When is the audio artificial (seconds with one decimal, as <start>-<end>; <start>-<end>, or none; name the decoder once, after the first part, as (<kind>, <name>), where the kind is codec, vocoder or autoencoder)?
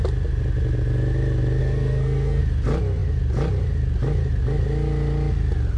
1.6-2.4 (codec, SNAC)